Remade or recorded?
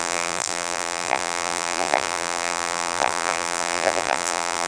remade